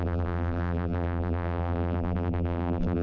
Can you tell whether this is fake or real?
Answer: fake